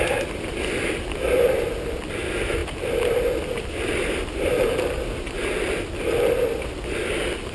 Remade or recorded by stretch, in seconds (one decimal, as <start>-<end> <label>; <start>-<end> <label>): 0.0-7.5 recorded